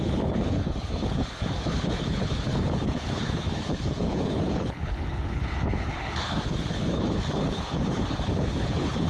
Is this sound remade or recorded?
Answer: remade